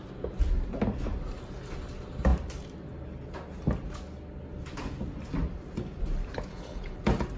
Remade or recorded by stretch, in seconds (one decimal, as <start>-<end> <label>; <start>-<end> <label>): 0.0-6.5 recorded; 6.5-7.0 remade; 7.0-7.4 recorded